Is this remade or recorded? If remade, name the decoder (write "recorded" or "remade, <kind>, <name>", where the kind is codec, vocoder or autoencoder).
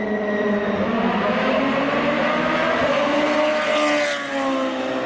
recorded